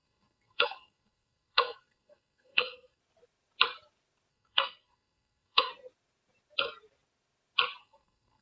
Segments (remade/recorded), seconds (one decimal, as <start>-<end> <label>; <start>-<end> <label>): 0.0-3.0 remade; 3.0-4.3 recorded; 4.3-5.7 remade; 5.7-7.8 recorded; 7.8-8.4 remade